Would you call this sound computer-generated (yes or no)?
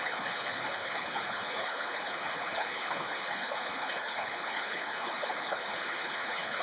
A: yes